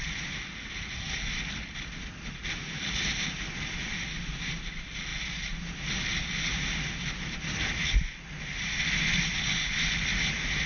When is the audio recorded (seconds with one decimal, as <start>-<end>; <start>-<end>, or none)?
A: 0.0-10.7